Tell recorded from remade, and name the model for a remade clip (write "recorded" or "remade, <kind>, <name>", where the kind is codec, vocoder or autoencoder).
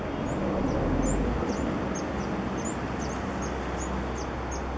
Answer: recorded